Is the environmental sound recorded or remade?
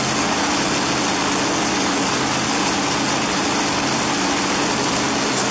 recorded